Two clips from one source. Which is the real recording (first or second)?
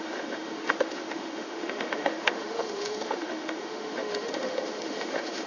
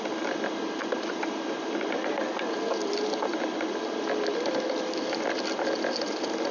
second